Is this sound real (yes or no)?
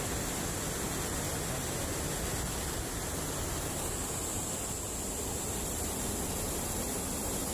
yes